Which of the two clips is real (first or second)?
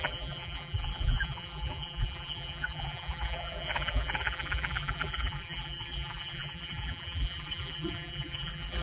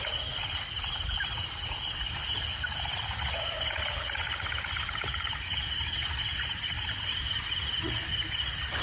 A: second